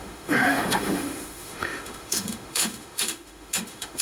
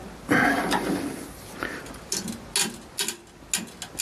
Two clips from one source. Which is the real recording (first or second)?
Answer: second